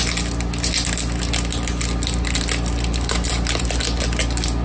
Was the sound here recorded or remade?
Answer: recorded